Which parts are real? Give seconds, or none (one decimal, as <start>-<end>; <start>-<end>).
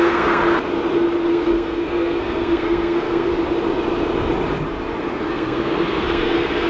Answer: 0.4-1.3; 3.3-5.1